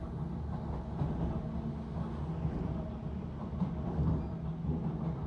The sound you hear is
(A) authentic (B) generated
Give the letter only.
A